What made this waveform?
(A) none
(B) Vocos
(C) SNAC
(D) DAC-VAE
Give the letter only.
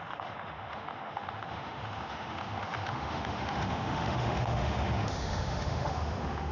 D